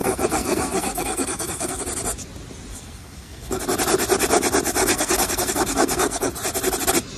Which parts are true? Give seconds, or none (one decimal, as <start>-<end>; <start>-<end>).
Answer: 1.8-2.7; 3.6-4.8; 6.3-7.2